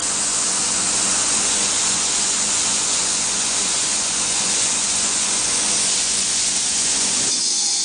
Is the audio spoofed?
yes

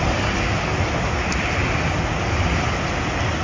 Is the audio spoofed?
no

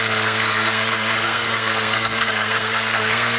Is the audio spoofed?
yes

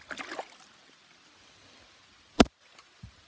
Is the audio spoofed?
no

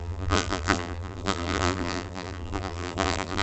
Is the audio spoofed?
yes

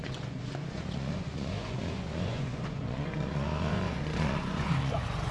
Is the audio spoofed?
yes